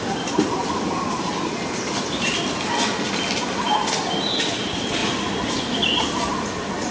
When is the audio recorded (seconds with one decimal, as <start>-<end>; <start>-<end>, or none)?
0.0-6.9